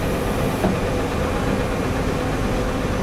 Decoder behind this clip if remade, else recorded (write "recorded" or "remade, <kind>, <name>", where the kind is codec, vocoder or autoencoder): recorded